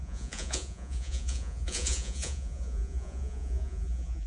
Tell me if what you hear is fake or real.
fake